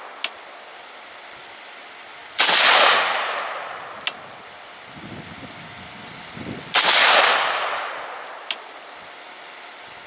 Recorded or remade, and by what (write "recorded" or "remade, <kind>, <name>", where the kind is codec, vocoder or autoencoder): recorded